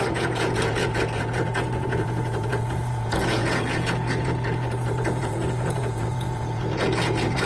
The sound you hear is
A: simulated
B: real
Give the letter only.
A